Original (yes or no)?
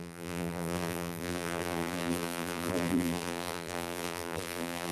no